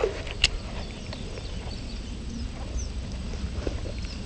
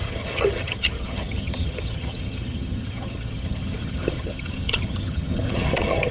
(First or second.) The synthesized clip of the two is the second